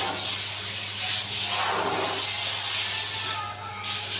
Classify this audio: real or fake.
real